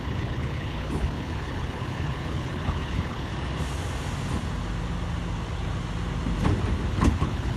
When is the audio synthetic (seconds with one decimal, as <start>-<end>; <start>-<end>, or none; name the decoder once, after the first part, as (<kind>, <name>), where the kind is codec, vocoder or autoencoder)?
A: 0.0-3.3 (codec, HILCodec); 6.9-7.6